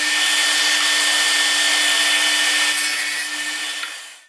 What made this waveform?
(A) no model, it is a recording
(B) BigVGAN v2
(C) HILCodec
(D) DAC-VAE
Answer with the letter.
A